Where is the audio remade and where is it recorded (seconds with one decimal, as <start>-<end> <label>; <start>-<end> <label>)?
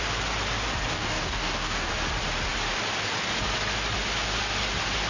0.0-0.9 recorded; 0.9-1.9 remade; 1.9-5.1 recorded